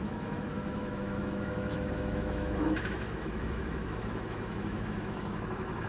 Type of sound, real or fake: fake